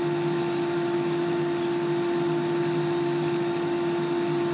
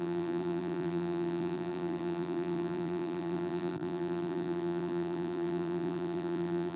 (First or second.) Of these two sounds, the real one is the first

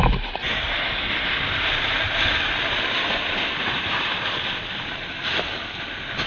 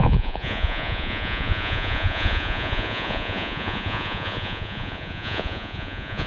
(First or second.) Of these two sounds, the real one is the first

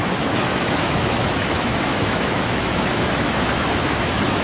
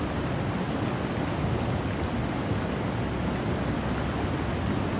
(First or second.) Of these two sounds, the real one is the second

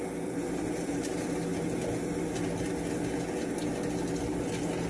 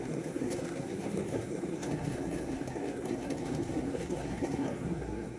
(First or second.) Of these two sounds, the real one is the first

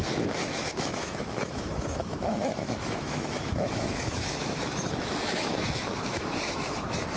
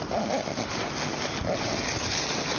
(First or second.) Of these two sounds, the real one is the second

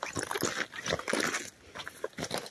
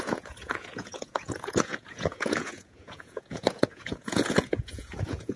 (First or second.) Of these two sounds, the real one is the first